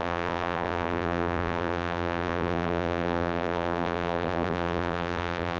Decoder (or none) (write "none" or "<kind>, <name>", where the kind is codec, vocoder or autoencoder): vocoder, BigVGAN v2